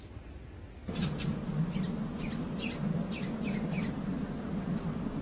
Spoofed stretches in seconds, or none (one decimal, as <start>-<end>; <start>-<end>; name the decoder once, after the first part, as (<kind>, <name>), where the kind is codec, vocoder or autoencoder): none